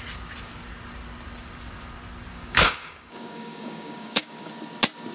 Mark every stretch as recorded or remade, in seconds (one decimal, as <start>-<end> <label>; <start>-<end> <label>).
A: 0.0-2.3 recorded; 2.3-4.5 remade; 4.5-5.1 recorded